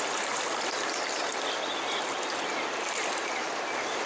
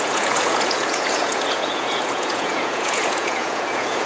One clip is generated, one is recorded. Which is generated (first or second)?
second